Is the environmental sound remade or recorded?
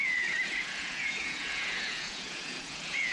remade